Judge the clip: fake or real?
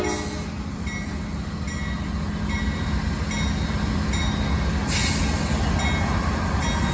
real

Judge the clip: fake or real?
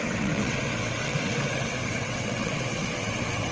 fake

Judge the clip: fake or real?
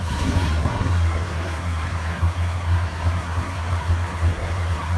fake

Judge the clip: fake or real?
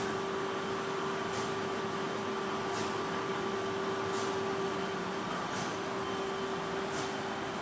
real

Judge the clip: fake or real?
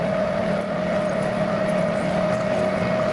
real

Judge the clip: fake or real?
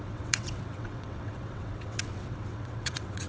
fake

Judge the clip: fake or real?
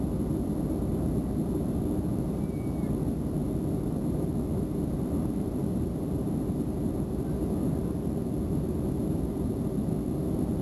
real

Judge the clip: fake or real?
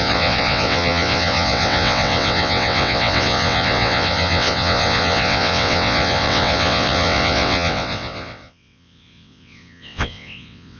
fake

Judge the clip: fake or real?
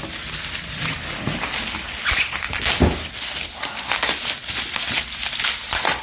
real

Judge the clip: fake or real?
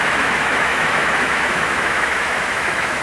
fake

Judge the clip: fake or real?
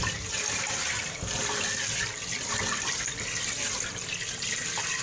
real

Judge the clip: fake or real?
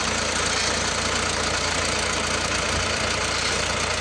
real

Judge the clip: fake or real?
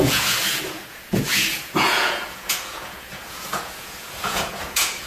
fake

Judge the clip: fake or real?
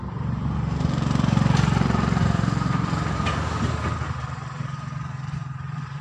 fake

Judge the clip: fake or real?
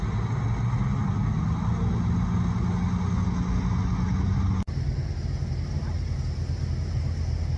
real